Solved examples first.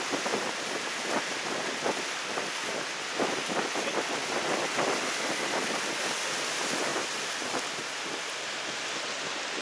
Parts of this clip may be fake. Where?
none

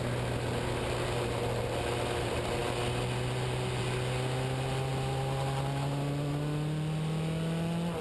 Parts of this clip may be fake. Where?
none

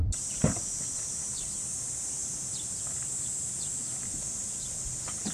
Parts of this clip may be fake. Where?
0.0-1.4 (vocoder, BigVGAN v2)